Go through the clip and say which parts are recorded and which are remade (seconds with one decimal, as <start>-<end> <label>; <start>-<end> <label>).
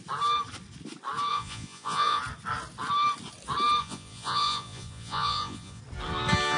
0.0-1.3 recorded; 1.3-2.2 remade; 2.2-3.8 recorded; 3.8-5.8 remade; 5.8-6.6 recorded